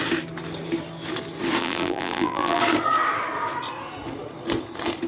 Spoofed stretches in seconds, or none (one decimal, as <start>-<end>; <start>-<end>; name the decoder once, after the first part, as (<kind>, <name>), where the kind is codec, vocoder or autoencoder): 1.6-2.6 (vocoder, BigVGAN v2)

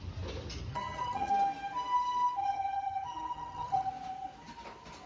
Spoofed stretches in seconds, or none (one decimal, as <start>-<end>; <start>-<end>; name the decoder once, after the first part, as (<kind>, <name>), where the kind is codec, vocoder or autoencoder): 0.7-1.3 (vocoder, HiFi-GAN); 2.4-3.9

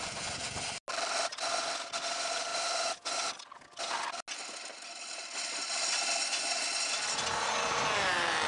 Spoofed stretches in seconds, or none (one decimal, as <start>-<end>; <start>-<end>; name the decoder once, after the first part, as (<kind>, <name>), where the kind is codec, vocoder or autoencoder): none

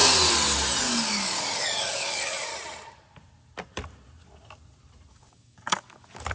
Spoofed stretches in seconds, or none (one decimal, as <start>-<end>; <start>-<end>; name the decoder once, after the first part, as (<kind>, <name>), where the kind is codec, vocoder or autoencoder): 0.8-2.5 (codec, DAC); 5.1-6.3

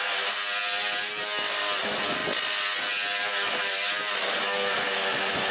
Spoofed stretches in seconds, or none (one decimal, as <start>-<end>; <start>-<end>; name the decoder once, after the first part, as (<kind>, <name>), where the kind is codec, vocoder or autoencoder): none

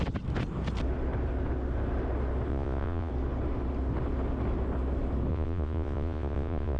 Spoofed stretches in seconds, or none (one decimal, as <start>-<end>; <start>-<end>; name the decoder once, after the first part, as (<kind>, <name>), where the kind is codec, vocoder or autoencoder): 2.5-3.1 (vocoder, Vocos); 5.3-6.8

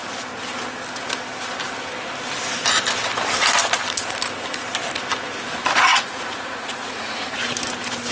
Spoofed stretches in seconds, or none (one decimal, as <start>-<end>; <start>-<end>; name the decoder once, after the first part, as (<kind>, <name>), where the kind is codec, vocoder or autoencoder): 5.9-7.4 (vocoder, Vocos)